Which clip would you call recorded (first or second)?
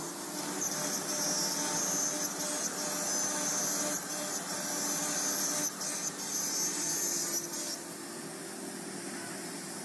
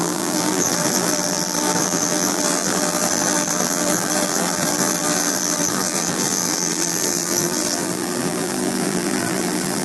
first